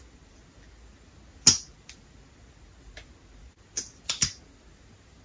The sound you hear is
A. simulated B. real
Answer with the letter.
B